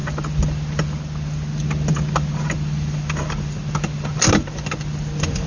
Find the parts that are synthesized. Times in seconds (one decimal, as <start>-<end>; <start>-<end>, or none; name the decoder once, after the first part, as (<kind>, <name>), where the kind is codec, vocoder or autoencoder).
none